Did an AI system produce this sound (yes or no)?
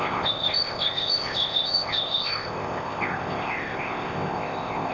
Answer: yes